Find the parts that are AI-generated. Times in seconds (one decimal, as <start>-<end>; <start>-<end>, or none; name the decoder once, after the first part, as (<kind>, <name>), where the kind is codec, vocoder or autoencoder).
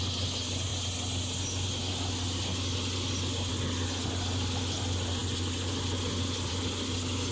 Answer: none